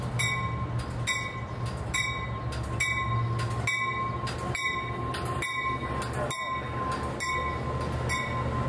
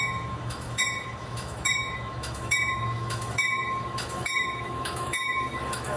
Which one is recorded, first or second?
first